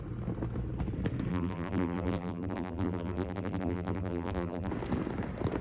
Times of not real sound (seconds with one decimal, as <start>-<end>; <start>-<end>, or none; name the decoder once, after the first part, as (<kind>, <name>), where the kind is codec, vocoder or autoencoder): 1.3-4.7 (vocoder, BigVGAN v2)